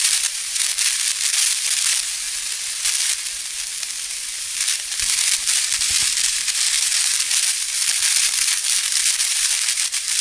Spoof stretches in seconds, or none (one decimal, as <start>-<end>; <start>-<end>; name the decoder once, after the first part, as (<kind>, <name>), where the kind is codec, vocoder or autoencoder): 0.0-0.7 (vocoder, BigVGAN v2); 4.4-10.2